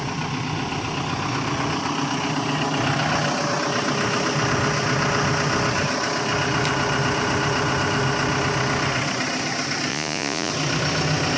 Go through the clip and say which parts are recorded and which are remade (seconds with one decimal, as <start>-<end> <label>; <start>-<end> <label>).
0.0-9.9 recorded; 9.9-10.5 remade; 10.5-11.4 recorded